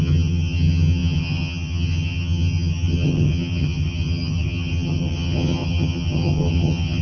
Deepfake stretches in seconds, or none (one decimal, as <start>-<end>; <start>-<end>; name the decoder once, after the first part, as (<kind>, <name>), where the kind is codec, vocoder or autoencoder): 0.0-7.0 (vocoder, HiFi-GAN)